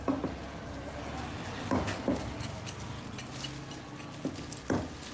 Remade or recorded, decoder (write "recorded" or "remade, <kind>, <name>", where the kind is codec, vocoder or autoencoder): recorded